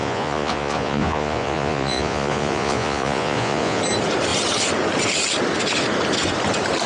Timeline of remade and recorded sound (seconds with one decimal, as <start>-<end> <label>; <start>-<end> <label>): 0.0-3.8 remade; 3.8-6.9 recorded

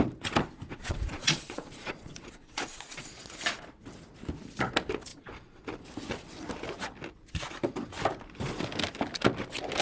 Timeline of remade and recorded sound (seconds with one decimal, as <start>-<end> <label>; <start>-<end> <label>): 0.0-0.7 recorded; 0.7-3.2 remade; 3.2-5.1 recorded; 5.1-5.6 remade; 5.6-9.8 recorded

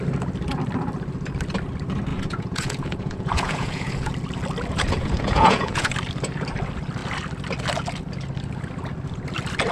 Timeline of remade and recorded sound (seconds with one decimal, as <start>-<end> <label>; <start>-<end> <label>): 0.0-2.1 recorded; 2.1-4.1 remade; 4.1-4.7 recorded; 4.7-5.9 remade; 5.9-9.7 recorded